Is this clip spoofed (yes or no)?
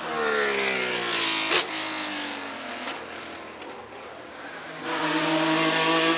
no